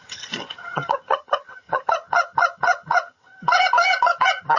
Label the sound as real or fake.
fake